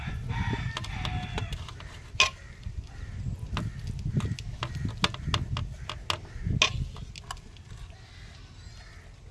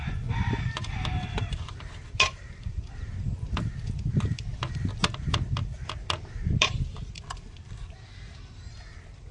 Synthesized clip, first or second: second